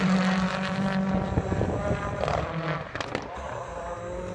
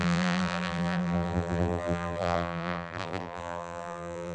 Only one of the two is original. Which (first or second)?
first